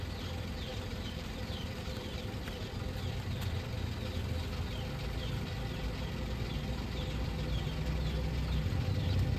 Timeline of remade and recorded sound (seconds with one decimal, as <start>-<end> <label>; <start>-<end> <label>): 0.0-0.7 recorded; 0.7-3.7 remade; 3.7-9.4 recorded